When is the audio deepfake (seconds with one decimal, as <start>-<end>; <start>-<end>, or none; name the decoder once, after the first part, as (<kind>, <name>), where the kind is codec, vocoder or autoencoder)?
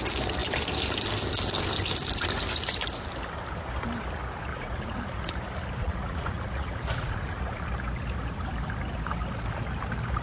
4.5-5.2 (vocoder, Vocos); 5.8-7.6